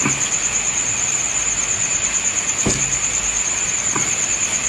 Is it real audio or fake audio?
real